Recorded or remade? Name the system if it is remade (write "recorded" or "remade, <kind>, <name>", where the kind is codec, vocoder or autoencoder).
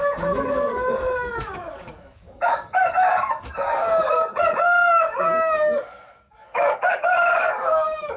remade, codec, DAC